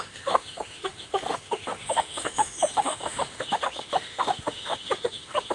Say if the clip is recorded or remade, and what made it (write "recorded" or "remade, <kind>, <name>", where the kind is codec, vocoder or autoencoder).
remade, autoencoder, DAC-VAE